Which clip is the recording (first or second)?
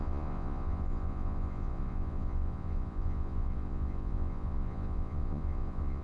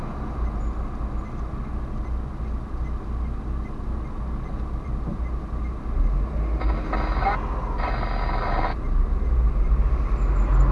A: second